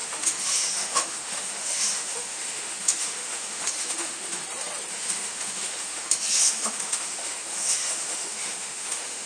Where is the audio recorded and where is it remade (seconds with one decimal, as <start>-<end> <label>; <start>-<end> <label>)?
0.0-4.4 remade; 4.4-4.9 recorded; 4.9-9.3 remade